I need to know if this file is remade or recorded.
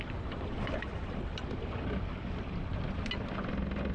recorded